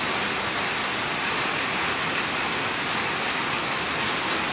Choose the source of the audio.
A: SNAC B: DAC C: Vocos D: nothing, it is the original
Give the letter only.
D